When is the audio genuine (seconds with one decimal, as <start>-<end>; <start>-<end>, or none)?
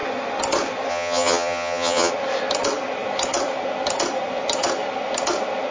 0.0-0.9; 2.1-5.7